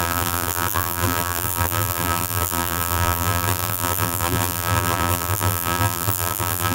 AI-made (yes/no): yes